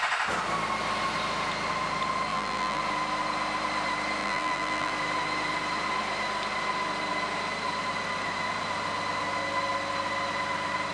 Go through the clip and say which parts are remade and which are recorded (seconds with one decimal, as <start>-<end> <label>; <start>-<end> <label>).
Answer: 0.0-2.3 recorded; 2.3-2.8 remade; 2.8-4.2 recorded; 4.2-4.9 remade; 4.9-10.9 recorded